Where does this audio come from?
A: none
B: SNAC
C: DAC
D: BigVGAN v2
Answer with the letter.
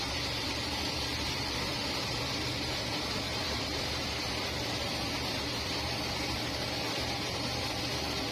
D